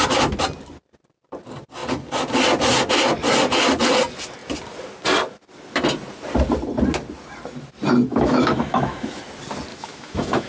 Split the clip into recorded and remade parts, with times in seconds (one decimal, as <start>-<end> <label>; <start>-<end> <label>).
0.0-8.1 recorded; 8.1-9.2 remade; 9.2-9.7 recorded; 9.7-10.5 remade